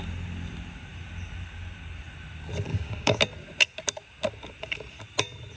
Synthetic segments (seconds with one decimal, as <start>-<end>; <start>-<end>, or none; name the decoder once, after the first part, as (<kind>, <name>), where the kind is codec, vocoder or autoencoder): 2.7-3.2 (codec, DAC)